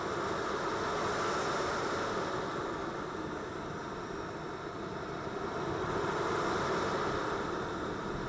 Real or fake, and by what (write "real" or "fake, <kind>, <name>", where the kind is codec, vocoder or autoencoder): real